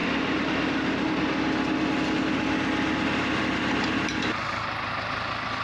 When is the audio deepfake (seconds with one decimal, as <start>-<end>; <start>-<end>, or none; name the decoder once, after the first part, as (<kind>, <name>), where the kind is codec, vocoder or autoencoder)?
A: none